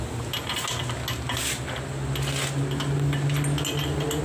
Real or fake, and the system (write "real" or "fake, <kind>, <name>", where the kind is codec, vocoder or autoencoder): real